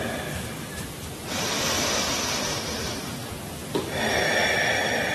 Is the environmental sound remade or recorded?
remade